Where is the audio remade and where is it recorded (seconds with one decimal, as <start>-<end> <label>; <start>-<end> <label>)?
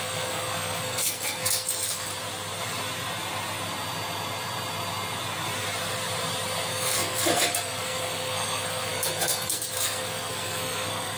0.0-2.1 remade; 2.1-6.7 recorded; 6.7-11.2 remade